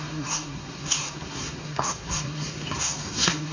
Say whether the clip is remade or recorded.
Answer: remade